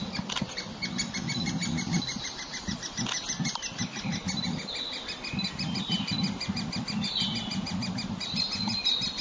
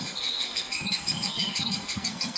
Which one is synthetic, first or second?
second